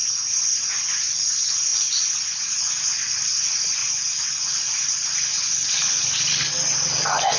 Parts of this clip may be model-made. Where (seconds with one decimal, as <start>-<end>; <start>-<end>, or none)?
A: none